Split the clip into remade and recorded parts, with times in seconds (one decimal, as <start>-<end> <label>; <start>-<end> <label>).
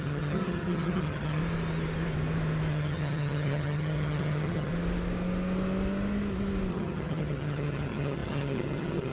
0.0-1.4 remade; 1.4-2.7 recorded; 2.7-4.7 remade; 4.7-6.7 recorded; 6.7-9.1 remade